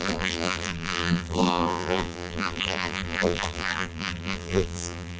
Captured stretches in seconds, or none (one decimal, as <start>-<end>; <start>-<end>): none